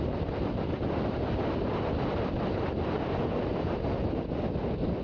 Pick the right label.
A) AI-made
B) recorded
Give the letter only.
B